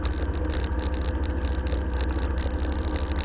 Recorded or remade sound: recorded